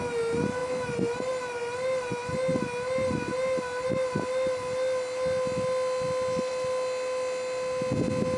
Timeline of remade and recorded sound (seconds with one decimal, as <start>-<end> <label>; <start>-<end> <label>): 0.0-8.4 recorded